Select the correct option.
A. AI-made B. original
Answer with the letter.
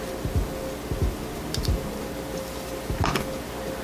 B